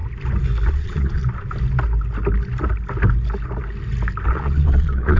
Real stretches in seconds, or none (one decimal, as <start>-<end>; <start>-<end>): 0.0-0.7; 1.2-4.3

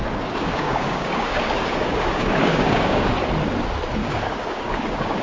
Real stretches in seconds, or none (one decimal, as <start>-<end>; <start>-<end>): 3.1-4.0

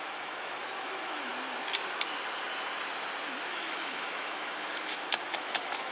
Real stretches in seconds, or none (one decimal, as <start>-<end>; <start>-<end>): 1.3-3.5

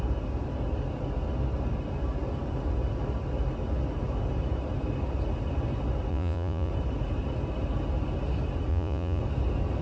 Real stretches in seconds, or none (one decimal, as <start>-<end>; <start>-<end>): 0.0-6.1; 6.7-8.7; 9.2-9.8

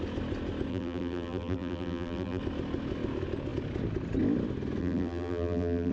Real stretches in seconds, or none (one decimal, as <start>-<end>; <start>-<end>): 0.0-0.7; 2.4-4.8